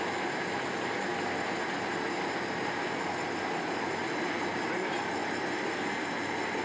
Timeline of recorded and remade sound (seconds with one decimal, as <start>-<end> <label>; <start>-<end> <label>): 0.0-6.6 recorded